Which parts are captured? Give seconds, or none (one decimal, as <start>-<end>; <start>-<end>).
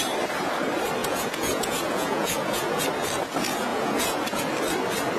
0.0-1.0; 2.8-3.7; 4.4-5.2